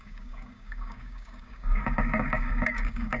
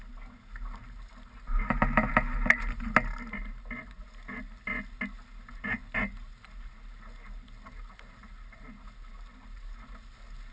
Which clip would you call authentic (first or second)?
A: second